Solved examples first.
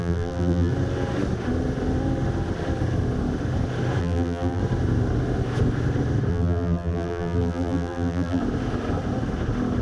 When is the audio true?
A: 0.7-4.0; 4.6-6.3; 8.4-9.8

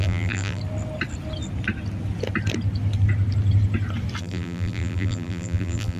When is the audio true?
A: 0.6-4.2